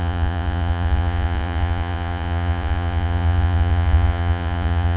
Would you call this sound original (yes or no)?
no